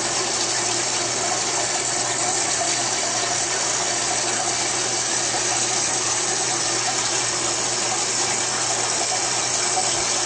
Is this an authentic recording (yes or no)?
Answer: yes